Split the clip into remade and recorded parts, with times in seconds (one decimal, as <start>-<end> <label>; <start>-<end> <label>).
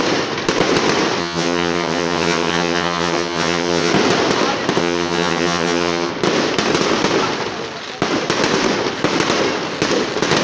0.0-1.2 recorded; 1.2-3.9 remade; 3.9-4.8 recorded; 4.8-6.1 remade; 6.1-10.4 recorded